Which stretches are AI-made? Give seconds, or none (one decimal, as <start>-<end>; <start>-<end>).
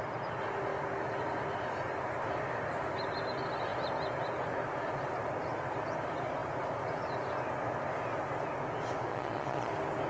9.1-9.7